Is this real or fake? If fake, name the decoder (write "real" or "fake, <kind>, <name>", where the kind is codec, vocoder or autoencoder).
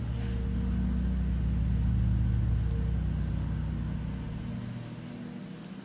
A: real